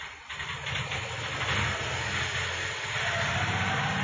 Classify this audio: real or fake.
real